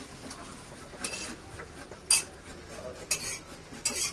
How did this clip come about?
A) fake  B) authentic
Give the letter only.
B